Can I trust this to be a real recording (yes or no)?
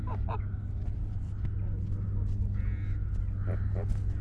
yes